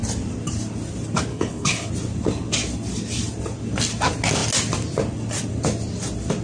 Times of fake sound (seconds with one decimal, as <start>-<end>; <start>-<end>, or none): 1.3-1.9